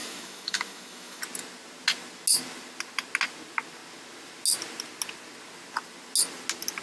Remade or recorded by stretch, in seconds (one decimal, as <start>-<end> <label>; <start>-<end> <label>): 0.0-1.2 remade; 1.2-6.8 recorded